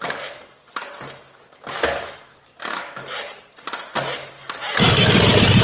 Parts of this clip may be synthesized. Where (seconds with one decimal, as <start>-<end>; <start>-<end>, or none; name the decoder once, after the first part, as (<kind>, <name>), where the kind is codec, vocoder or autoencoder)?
none